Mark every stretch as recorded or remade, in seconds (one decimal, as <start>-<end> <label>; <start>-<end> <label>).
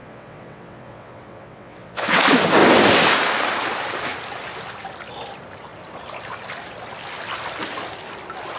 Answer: 0.0-2.2 remade; 2.2-8.6 recorded